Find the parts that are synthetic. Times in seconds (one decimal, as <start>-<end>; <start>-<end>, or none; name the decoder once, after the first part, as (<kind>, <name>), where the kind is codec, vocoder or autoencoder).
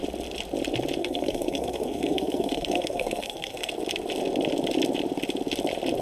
1.0-3.7 (codec, SNAC)